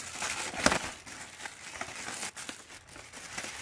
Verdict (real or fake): real